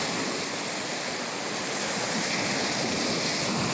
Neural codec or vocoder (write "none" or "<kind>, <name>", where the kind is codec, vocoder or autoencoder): none